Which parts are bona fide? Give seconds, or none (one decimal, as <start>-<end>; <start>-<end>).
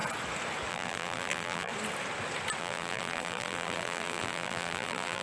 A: 0.0-0.7; 1.7-2.6